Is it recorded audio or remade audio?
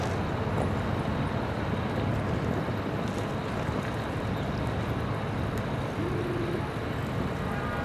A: recorded